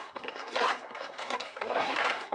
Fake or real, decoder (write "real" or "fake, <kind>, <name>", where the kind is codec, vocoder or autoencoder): fake, codec, SNAC